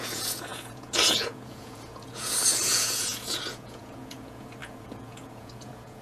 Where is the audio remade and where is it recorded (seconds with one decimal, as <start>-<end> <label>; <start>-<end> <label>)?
0.0-6.0 remade